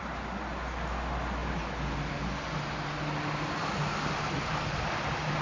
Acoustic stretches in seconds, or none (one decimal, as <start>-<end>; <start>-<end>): 0.0-5.4